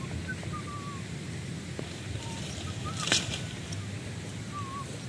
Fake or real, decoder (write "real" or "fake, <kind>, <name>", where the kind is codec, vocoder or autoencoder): real